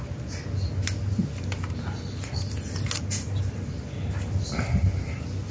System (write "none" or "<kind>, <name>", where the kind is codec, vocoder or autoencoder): none